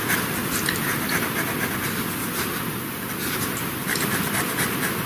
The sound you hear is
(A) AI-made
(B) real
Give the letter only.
B